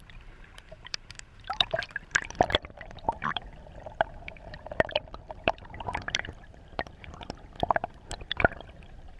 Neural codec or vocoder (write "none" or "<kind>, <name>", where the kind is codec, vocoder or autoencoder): vocoder, BigVGAN v2